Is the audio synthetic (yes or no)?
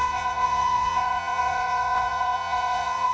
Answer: yes